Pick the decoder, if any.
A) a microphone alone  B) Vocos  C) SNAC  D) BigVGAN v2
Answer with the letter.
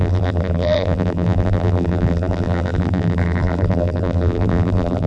D